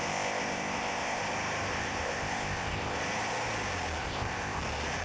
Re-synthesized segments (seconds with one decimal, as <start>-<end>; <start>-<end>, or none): 0.0-1.2; 1.7-3.0; 4.0-4.6